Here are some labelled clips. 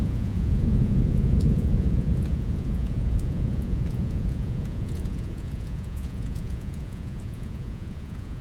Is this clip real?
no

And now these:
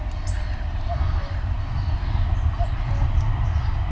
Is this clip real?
yes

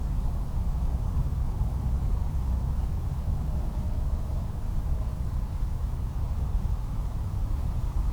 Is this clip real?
no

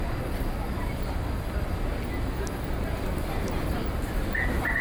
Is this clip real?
yes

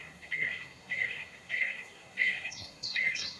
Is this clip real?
no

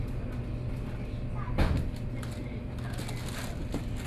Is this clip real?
yes